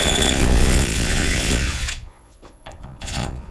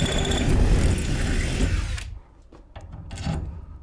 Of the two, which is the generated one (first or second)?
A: first